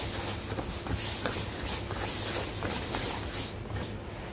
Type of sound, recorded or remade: recorded